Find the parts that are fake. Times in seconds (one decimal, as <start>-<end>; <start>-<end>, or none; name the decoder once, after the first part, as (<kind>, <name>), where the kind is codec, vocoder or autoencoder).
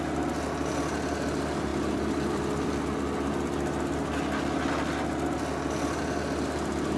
1.7-2.8 (vocoder, BigVGAN v2)